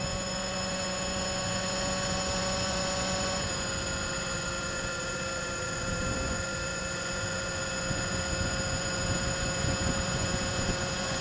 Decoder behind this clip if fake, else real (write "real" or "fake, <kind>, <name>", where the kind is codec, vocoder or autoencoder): fake, vocoder, Vocos